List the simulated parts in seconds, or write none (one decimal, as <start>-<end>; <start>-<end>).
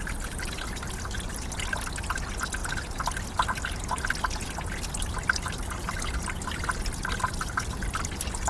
none